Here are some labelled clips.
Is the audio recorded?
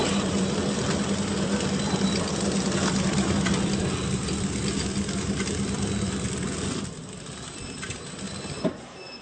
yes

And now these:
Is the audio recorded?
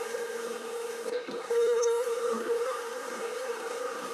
no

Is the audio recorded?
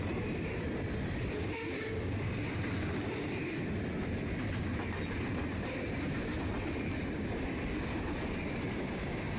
yes